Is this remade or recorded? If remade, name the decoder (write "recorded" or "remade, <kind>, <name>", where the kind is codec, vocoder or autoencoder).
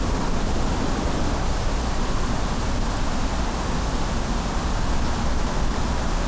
recorded